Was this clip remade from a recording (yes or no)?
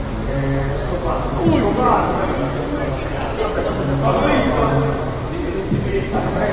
no